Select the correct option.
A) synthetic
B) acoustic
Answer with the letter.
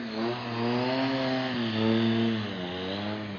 B